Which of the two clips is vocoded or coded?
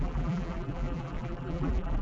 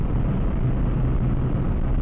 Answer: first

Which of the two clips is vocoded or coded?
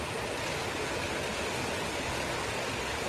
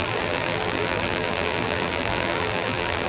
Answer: second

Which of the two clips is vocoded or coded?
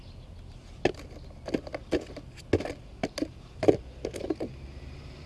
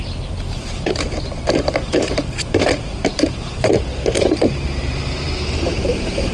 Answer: second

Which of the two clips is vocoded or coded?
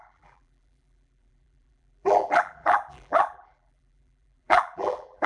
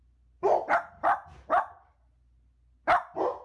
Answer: first